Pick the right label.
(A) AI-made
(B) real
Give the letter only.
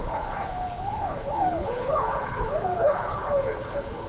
A